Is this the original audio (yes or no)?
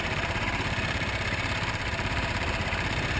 no